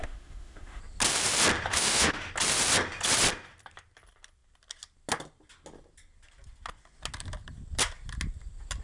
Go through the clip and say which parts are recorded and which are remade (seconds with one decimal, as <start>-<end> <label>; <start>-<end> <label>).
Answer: 0.0-0.8 remade; 0.8-1.7 recorded; 1.7-2.3 remade; 2.3-8.8 recorded